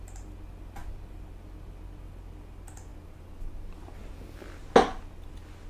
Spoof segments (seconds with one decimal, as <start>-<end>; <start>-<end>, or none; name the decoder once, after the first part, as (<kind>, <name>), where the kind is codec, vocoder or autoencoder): none